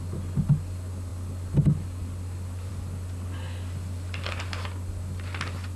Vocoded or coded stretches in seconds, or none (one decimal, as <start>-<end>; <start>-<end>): none